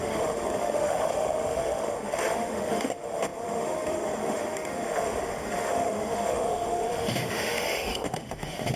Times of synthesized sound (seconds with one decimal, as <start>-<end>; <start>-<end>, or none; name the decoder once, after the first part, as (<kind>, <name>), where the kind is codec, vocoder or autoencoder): 0.0-8.8 (autoencoder, DAC-VAE)